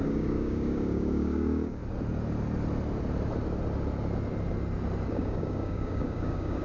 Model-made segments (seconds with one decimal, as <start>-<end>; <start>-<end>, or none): 0.0-1.8; 5.1-6.6